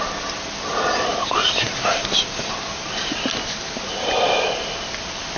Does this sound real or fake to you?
real